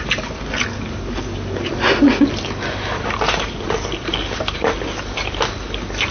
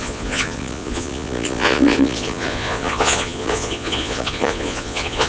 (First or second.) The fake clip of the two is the second